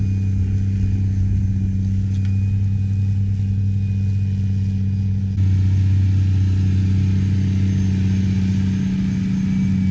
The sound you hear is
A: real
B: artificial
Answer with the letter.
A